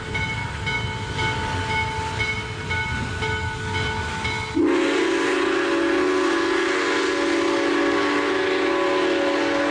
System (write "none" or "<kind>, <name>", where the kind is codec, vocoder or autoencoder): none